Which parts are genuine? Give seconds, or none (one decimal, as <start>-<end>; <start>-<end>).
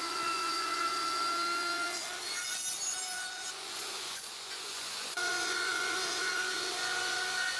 0.9-3.5